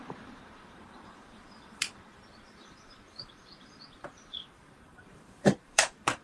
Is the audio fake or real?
fake